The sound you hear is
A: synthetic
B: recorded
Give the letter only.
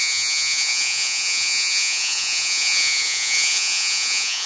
A